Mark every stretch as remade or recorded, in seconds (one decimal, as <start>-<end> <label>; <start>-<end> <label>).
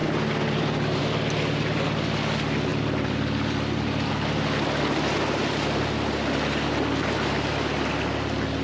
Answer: 0.0-1.0 remade; 1.0-2.7 recorded; 2.7-4.1 remade; 4.1-8.6 recorded